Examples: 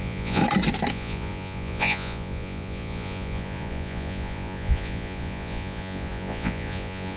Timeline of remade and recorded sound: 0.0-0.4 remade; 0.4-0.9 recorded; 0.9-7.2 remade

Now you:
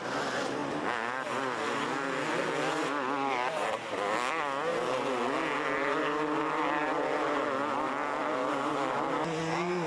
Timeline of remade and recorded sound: 0.0-9.9 recorded

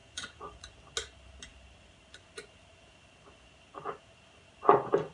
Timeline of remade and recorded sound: 0.0-0.6 remade; 0.6-5.1 recorded

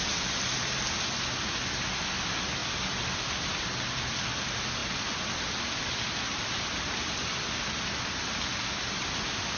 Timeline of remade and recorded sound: 0.0-9.6 recorded

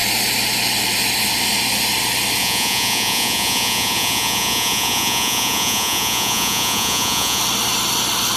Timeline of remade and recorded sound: 0.0-2.4 recorded; 2.4-7.4 remade; 7.4-8.4 recorded

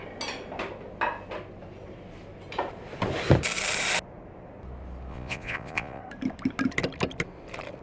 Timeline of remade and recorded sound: 0.0-5.1 recorded; 5.1-6.0 remade; 6.0-7.8 recorded

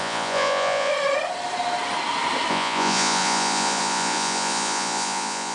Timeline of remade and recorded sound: 0.0-0.9 remade; 0.9-2.5 recorded; 2.5-5.5 remade

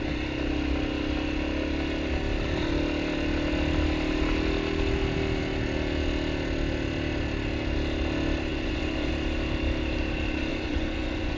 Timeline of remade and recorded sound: 0.0-8.5 recorded; 8.5-9.1 remade; 9.1-10.5 recorded; 10.5-11.4 remade